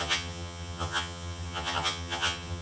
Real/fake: fake